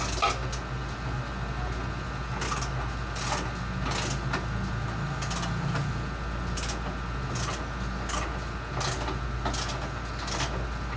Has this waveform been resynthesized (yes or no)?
no